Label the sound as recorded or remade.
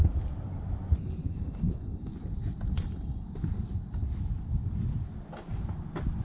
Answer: recorded